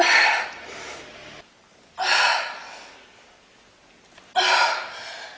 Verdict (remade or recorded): recorded